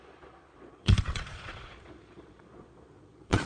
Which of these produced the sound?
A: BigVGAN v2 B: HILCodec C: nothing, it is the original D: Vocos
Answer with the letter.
D